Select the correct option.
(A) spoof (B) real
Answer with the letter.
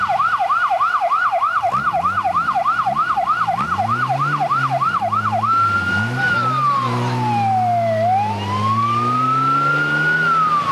B